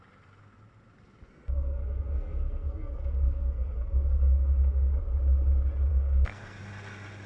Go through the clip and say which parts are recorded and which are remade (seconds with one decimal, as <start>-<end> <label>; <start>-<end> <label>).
0.0-1.3 recorded; 1.3-5.0 remade; 5.0-5.9 recorded; 5.9-6.6 remade; 6.6-7.3 recorded